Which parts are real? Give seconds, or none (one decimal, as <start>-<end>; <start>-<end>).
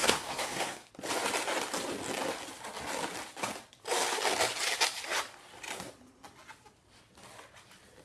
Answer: 0.9-8.0